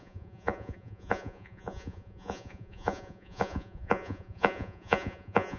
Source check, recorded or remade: remade